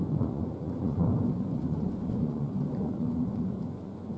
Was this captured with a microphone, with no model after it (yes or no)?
no